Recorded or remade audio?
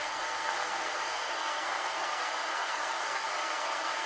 remade